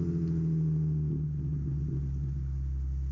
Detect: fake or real real